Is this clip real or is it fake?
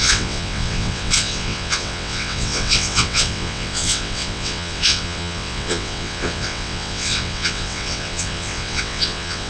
fake